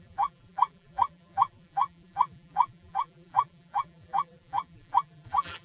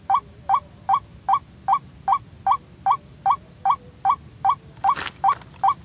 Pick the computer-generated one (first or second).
first